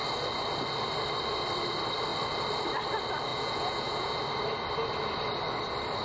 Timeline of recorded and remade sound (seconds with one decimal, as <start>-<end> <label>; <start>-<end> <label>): 0.0-3.3 recorded; 3.3-4.2 remade; 4.2-6.0 recorded